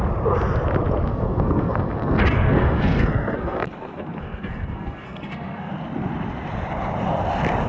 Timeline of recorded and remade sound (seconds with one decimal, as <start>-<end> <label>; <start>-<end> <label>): 0.0-1.1 recorded; 1.1-5.7 remade; 5.7-7.7 recorded

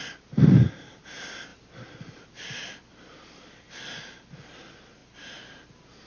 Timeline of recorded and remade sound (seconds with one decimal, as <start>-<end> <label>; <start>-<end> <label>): 0.0-6.1 recorded

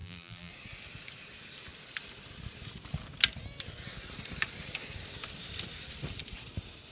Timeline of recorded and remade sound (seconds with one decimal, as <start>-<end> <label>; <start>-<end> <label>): 0.0-0.5 remade; 0.5-6.9 recorded

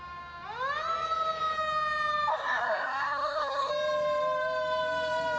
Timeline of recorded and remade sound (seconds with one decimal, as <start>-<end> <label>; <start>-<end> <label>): 0.0-2.3 recorded; 2.3-3.7 remade; 3.7-5.4 recorded

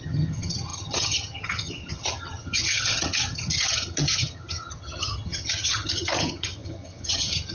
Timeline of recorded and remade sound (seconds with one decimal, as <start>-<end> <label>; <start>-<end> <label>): 0.0-7.5 remade

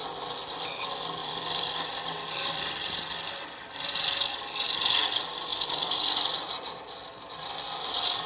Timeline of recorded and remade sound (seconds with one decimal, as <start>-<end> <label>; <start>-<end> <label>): 0.0-1.2 recorded; 1.2-3.9 remade; 3.9-5.5 recorded; 5.5-7.4 remade; 7.4-8.3 recorded

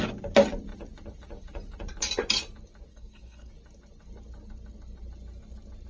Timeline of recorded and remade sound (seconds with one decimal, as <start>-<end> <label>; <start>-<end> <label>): 0.0-2.9 recorded; 2.9-3.5 remade; 3.5-5.9 recorded